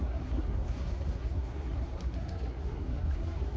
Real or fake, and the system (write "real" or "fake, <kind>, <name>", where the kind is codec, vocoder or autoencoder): fake, codec, SNAC